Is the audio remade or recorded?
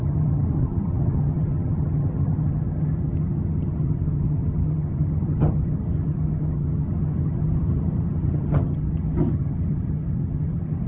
remade